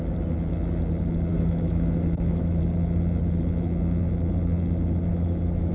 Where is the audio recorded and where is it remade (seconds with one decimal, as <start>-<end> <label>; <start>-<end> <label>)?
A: 0.0-1.3 recorded; 1.3-2.6 remade; 2.6-5.1 recorded; 5.1-5.7 remade